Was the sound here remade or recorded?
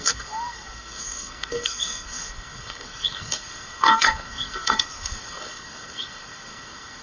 remade